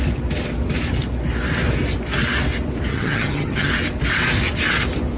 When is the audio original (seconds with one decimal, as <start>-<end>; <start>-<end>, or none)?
0.0-2.9; 3.7-5.2